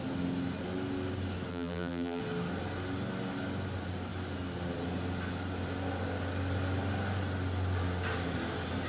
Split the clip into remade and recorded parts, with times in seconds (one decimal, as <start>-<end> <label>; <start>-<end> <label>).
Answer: 0.0-1.5 recorded; 1.5-2.2 remade; 2.2-8.9 recorded